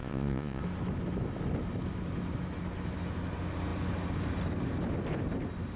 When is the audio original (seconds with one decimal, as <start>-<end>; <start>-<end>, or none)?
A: 0.6-5.8